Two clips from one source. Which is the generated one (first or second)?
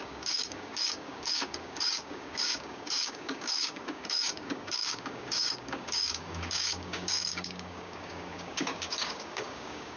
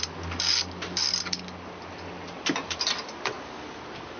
first